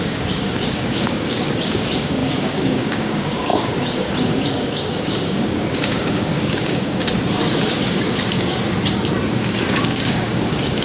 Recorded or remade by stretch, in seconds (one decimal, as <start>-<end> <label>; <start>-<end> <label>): 0.0-7.1 remade; 7.1-7.7 recorded; 7.7-8.6 remade; 8.6-9.3 recorded; 9.3-10.8 remade